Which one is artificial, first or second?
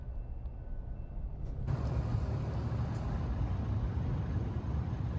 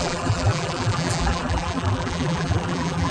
second